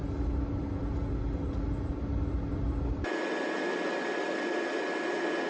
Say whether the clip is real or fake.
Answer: real